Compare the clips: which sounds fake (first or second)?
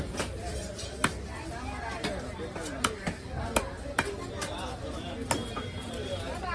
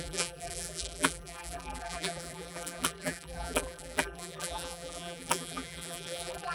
second